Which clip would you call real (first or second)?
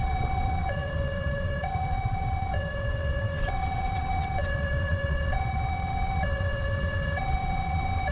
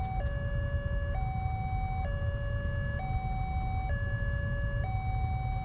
second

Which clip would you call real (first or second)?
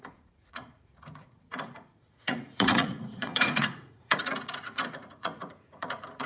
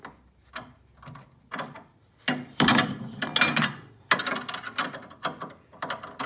second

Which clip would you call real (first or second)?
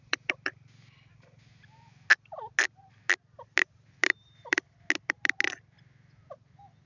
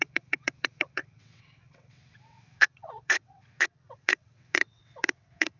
first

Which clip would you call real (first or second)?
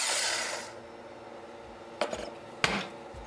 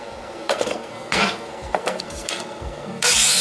first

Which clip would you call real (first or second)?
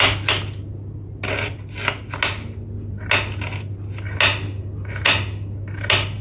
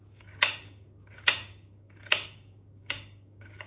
first